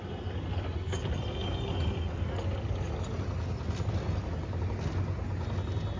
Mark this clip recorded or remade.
recorded